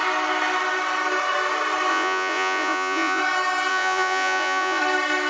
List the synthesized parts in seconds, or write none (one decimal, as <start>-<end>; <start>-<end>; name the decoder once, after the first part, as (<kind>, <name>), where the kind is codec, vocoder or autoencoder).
1.9-3.2 (vocoder, Vocos); 3.7-4.8